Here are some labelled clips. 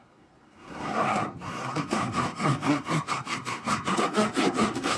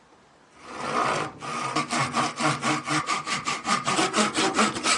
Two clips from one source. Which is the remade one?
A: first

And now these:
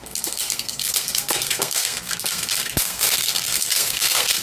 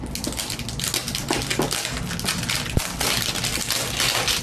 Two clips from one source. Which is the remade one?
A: first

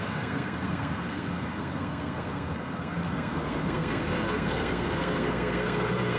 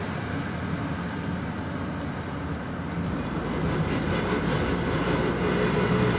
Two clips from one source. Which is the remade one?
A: first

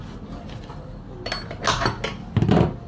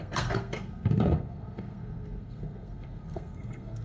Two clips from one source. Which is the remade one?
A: second